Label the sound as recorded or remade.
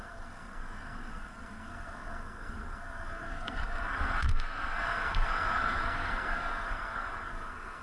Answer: remade